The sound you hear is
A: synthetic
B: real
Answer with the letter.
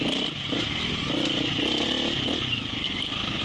B